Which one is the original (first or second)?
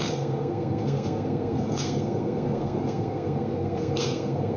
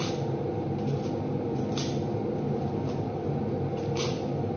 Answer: second